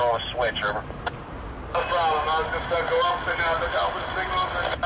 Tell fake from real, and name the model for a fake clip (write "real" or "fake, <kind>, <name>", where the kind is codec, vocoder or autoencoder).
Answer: real